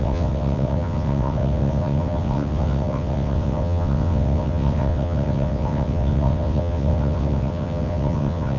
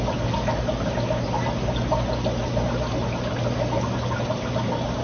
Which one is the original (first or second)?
second